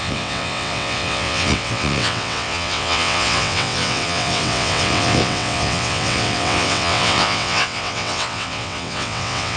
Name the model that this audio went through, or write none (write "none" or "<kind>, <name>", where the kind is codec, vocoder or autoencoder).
vocoder, WaveNeXt